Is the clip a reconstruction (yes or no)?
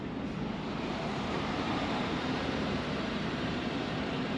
yes